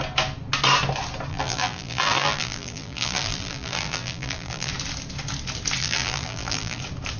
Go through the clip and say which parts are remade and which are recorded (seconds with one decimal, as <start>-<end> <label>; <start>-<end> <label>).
0.0-1.3 recorded; 1.3-4.7 remade; 4.7-5.8 recorded; 5.8-6.8 remade; 6.8-7.2 recorded